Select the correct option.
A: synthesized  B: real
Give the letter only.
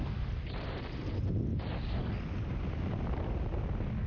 B